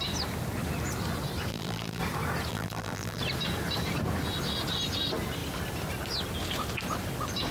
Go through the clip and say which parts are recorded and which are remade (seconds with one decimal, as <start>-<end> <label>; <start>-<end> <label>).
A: 0.0-1.5 recorded; 1.5-2.0 remade; 2.0-2.5 recorded; 2.5-3.2 remade; 3.2-7.5 recorded